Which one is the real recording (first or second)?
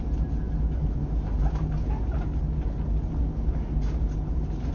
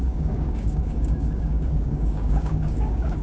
first